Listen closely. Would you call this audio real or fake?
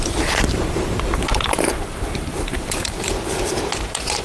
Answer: fake